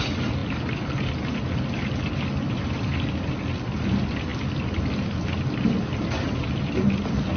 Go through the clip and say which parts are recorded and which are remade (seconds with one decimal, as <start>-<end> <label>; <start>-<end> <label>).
0.0-7.4 recorded